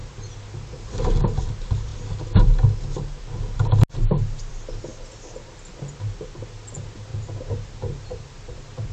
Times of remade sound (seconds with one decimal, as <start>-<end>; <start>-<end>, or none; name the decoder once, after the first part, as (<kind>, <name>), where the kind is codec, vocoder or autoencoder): 7.1-8.9 (vocoder, BigVGAN v2)